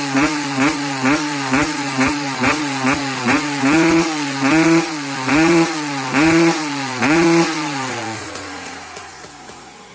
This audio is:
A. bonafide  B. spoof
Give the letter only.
B